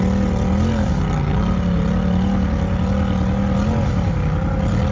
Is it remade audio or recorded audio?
recorded